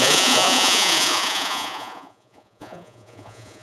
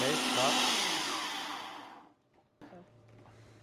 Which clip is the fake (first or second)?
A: first